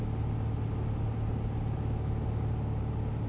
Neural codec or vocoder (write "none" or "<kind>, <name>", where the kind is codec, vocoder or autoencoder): none